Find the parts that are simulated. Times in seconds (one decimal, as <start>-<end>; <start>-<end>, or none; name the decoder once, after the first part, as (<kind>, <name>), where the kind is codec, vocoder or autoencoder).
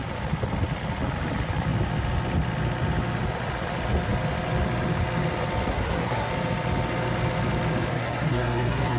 5.7-6.3 (codec, SNAC); 7.9-9.0